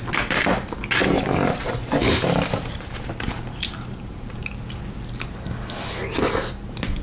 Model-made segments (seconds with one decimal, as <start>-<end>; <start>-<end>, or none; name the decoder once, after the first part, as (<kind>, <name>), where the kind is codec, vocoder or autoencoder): 1.0-4.5 (vocoder, BigVGAN v2)